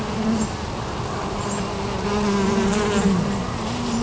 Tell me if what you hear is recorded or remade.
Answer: recorded